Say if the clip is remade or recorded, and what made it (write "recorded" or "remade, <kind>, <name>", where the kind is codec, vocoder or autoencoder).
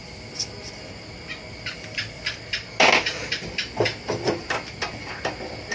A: recorded